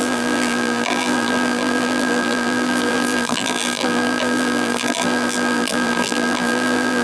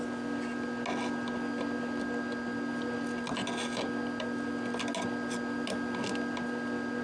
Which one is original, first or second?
second